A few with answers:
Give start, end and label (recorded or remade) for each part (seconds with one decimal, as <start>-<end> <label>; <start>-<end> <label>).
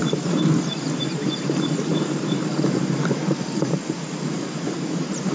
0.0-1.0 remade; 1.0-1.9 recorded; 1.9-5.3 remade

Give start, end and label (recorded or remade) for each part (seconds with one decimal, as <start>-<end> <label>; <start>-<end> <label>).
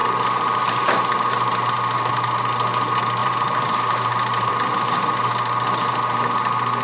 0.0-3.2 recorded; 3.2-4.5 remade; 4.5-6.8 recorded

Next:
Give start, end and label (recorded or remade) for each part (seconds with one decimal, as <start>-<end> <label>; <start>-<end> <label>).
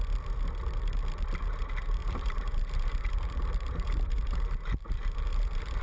0.0-2.0 recorded; 2.0-5.8 remade